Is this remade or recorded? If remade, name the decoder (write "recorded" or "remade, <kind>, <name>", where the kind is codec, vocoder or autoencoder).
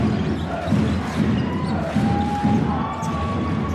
recorded